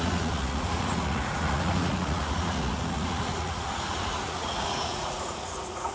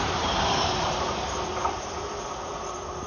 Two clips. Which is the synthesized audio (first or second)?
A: first